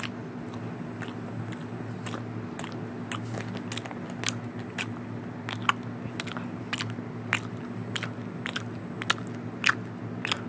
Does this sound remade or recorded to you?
recorded